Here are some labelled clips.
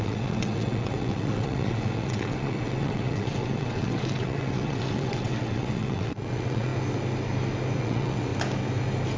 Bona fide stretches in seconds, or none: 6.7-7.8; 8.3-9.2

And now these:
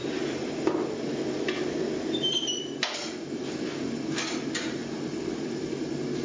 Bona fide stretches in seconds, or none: 0.0-6.2

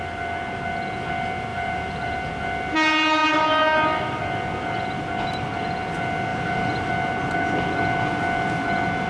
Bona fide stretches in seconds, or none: 0.0-1.5; 2.2-3.2; 4.2-6.3; 6.9-9.1

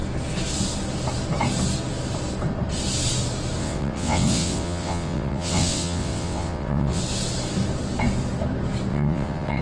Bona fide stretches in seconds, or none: 0.0-3.6; 7.0-8.9

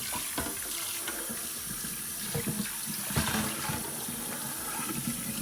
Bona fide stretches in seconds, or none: 0.0-5.4

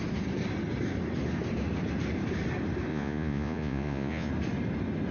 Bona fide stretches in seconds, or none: 0.0-2.9; 4.3-5.1

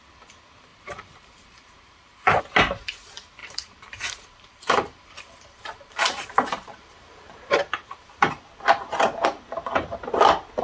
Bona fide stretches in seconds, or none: 0.0-0.7; 2.4-3.4; 8.4-10.6

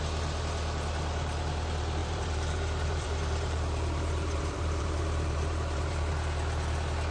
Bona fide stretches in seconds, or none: 0.0-2.0; 6.1-7.1